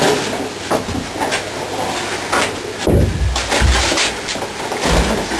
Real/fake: real